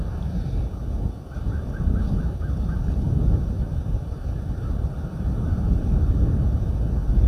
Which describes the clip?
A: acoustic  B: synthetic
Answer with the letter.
A